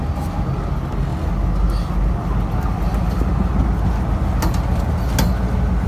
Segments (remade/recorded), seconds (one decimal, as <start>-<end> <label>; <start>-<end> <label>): 0.0-5.9 recorded